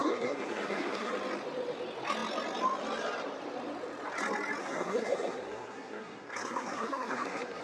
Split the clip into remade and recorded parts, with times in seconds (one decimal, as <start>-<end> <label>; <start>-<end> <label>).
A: 0.0-1.1 remade; 1.1-4.6 recorded; 4.6-7.6 remade

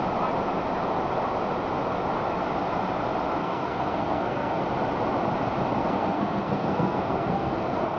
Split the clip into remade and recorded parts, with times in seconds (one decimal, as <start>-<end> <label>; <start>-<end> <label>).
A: 0.0-3.4 recorded; 3.4-4.6 remade; 4.6-5.8 recorded; 5.8-8.0 remade

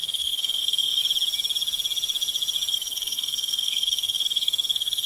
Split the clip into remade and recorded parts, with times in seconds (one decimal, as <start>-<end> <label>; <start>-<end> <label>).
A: 0.0-1.0 remade; 1.0-2.7 recorded; 2.7-5.1 remade

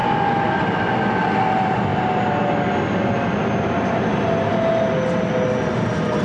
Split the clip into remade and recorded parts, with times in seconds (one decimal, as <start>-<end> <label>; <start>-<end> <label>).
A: 0.0-6.2 recorded

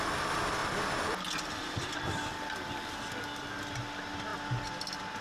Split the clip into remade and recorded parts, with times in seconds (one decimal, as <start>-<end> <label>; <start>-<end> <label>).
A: 0.0-5.2 recorded

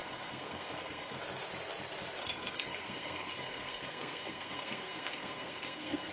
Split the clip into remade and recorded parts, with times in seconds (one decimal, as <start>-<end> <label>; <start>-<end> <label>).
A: 0.0-1.2 remade; 1.2-2.2 recorded; 2.2-6.1 remade